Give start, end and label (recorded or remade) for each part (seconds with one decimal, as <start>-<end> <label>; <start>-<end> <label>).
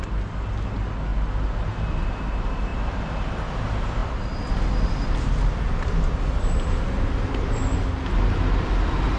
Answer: 0.0-9.2 recorded